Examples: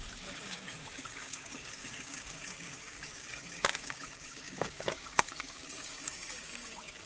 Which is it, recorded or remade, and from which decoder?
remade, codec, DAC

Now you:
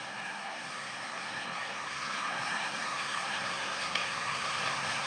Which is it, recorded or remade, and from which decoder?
remade, codec, SNAC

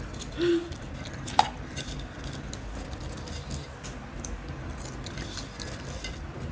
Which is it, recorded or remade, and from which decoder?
recorded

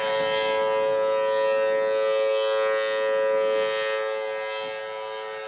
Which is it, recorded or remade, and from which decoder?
recorded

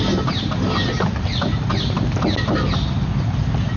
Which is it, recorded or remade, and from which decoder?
recorded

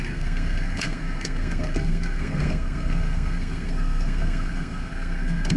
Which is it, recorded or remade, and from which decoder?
remade, codec, SNAC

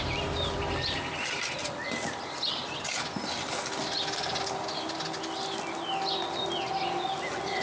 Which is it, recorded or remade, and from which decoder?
recorded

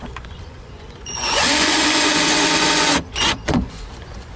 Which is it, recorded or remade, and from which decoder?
remade, vocoder, Vocos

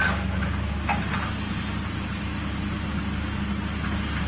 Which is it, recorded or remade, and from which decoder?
recorded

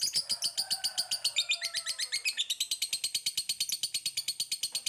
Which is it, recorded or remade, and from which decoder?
recorded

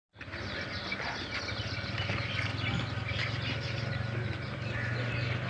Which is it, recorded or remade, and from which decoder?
recorded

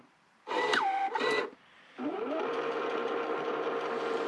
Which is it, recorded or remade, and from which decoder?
remade, vocoder, BigVGAN v2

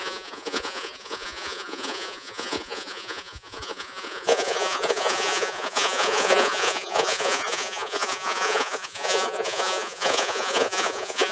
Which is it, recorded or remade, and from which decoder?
remade, vocoder, Vocos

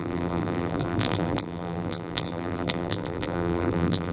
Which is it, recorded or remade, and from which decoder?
remade, vocoder, BigVGAN v2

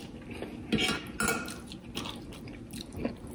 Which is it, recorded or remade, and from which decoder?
recorded